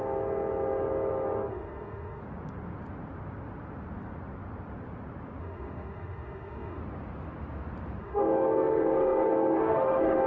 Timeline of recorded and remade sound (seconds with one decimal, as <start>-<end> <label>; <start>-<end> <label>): 0.0-1.5 recorded; 1.5-2.2 remade; 2.2-5.4 recorded; 5.4-6.8 remade; 6.8-8.0 recorded; 8.0-10.3 remade